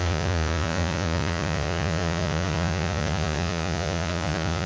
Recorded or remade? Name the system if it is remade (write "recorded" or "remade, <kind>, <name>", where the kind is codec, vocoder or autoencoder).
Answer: remade, vocoder, Vocos